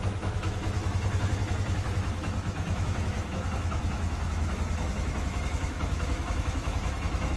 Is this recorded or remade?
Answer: remade